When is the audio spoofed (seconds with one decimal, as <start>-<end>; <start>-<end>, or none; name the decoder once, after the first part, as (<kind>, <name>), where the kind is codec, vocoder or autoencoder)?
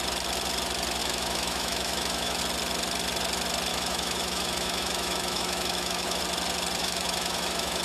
1.0-2.4 (autoencoder, DAC-VAE); 3.7-6.2; 6.8-7.8